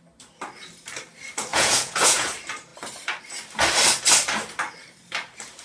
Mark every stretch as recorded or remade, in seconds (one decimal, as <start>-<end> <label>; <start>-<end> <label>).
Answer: 0.0-1.5 recorded; 1.5-2.3 remade; 2.3-5.6 recorded